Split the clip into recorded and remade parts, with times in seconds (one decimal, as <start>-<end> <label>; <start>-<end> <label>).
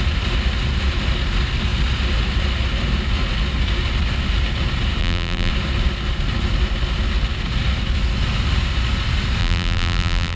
0.0-5.0 recorded; 5.0-5.5 remade; 5.5-9.4 recorded; 9.4-10.4 remade